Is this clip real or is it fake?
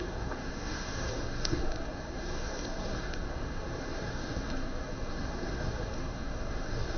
fake